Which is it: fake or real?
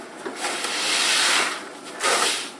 real